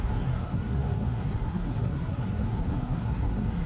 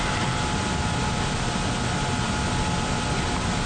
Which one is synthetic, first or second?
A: first